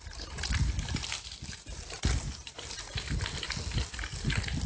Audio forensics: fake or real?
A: real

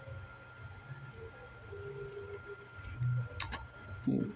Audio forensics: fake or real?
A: real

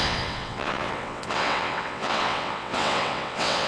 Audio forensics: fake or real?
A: fake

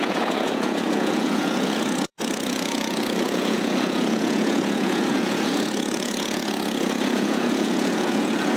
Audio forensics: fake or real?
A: fake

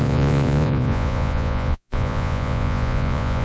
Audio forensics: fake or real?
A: fake